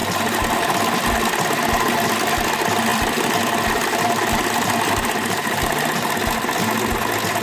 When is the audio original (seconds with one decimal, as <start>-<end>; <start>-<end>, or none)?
0.0-2.9; 6.1-7.4